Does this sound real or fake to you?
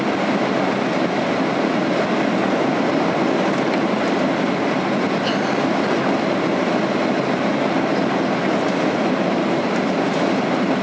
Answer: real